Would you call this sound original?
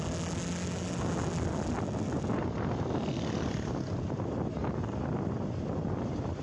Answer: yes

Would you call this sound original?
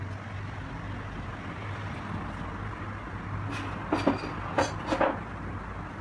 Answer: yes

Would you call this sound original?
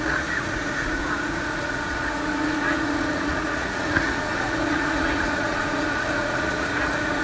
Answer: no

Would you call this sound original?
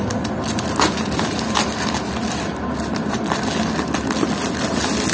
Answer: yes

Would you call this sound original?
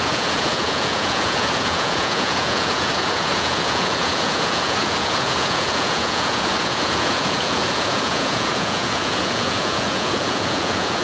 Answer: no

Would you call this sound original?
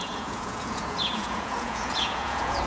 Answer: no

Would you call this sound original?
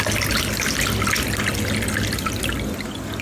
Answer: yes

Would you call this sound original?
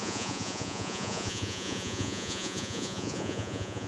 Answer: no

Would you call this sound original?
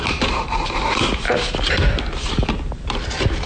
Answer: yes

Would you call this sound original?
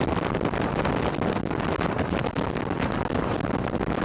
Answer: yes